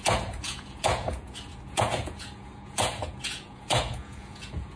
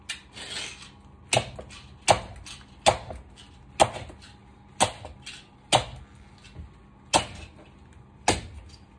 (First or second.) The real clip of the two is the second